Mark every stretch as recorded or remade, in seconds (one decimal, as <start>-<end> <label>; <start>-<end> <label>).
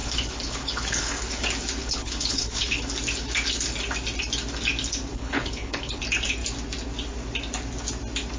0.0-1.4 remade; 1.4-1.8 recorded; 1.8-2.8 remade; 2.8-5.1 recorded; 5.1-6.0 remade; 6.0-8.4 recorded